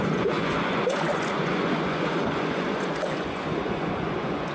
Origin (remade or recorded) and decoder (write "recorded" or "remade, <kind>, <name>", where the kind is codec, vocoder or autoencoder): remade, vocoder, Vocos